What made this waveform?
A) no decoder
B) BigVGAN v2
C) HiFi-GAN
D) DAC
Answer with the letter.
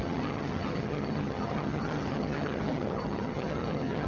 C